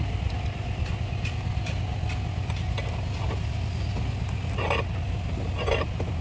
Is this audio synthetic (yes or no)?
no